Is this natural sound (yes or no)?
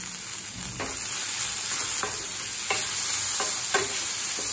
yes